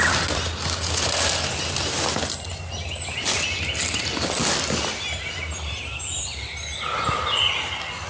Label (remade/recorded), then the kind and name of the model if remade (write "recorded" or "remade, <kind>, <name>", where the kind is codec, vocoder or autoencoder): recorded